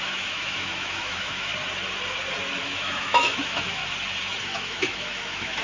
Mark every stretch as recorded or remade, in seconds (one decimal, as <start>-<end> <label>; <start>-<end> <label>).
0.0-1.5 remade; 1.5-2.6 recorded; 2.6-3.8 remade; 3.8-4.4 recorded; 4.4-5.6 remade